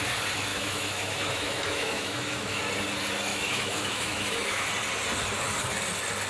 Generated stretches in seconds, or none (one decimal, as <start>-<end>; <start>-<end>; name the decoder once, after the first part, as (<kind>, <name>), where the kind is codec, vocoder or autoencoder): 0.5-2.6 (autoencoder, DAC-VAE); 3.3-4.7